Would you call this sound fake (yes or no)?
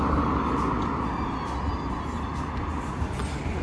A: no